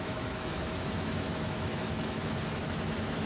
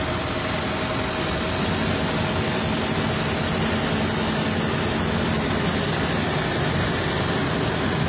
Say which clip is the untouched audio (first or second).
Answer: second